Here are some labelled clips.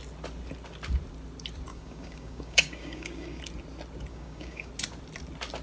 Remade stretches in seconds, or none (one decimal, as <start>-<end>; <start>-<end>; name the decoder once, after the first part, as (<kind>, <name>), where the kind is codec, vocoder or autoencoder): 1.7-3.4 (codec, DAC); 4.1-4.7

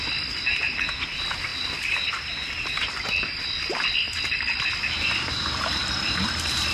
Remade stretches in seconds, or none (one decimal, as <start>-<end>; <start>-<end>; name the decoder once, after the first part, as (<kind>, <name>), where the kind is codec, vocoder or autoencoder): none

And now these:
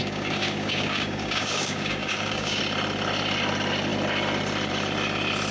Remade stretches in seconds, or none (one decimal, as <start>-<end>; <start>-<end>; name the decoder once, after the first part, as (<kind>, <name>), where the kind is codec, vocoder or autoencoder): 0.0-2.6 (codec, DAC)

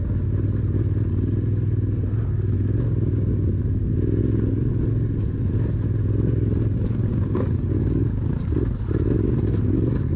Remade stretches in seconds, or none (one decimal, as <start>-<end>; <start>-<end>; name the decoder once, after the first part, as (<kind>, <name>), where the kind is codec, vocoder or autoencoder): 7.1-8.3 (codec, DAC)

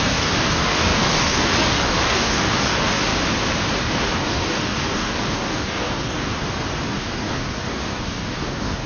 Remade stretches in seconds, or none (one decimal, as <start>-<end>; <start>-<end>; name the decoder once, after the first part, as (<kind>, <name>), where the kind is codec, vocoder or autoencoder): 0.0-3.1 (codec, DAC); 3.8-6.3; 6.9-8.9

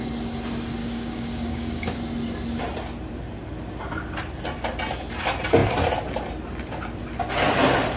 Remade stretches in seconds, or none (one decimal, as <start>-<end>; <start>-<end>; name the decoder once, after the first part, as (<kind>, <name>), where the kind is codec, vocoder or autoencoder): 0.8-2.0 (codec, DAC)

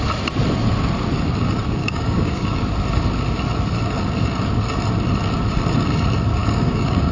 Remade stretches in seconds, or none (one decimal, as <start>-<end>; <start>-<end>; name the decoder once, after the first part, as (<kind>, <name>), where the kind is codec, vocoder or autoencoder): 1.8-2.6 (codec, DAC); 6.4-7.1

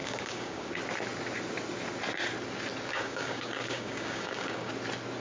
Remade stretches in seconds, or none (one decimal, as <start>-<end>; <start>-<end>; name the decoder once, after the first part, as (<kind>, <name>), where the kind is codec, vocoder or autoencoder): 0.0-0.7 (codec, DAC); 2.9-4.7